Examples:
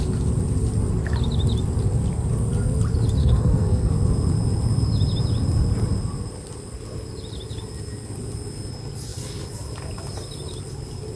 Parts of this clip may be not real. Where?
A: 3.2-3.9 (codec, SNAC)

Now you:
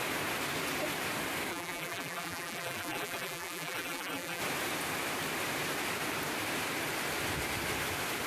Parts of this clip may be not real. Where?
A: 1.5-4.4 (vocoder, BigVGAN v2)

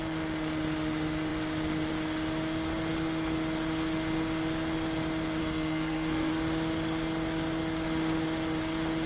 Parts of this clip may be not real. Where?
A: 5.4-6.3 (codec, SNAC)

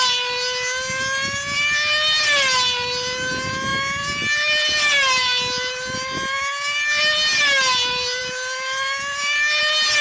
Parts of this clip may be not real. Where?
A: none

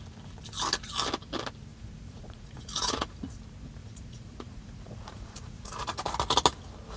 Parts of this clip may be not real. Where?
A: 1.7-3.4 (vocoder, Vocos); 3.8-6.0

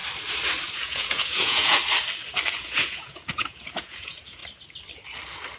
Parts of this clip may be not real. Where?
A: 0.7-1.8 (vocoder, Vocos); 2.5-4.4

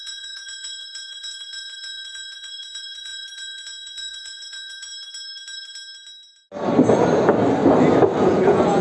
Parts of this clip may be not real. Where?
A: 0.0-4.9 (vocoder, Vocos); 8.2-8.8

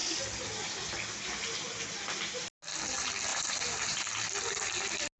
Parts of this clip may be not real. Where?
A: 3.3-4.0 (vocoder, BigVGAN v2)